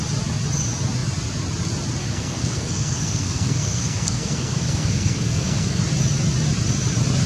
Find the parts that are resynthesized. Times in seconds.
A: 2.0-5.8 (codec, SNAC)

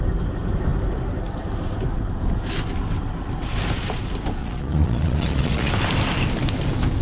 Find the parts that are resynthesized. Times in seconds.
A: 4.4-5.7 (vocoder, Vocos)

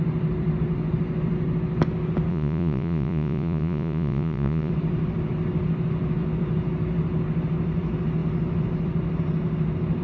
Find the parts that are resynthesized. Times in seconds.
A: 2.3-4.7 (vocoder, Vocos)

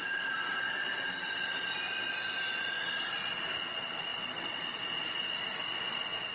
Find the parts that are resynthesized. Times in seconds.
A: none

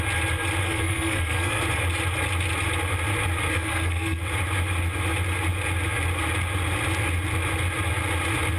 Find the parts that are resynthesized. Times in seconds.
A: 0.6-1.6 (codec, SNAC); 3.5-4.2

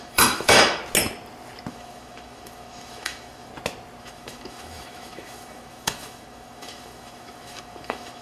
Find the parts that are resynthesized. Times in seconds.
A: 0.0-0.8 (autoencoder, DAC-VAE); 1.7-3.5; 4.0-8.2

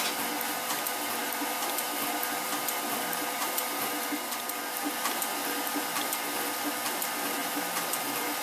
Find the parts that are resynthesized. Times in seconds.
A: none

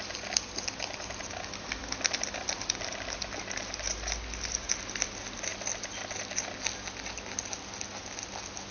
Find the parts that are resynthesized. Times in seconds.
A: none